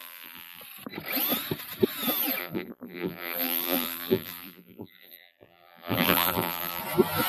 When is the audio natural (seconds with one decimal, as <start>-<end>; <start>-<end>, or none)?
0.6-2.4; 6.8-7.3